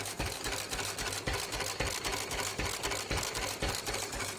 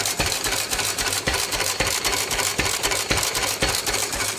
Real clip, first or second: first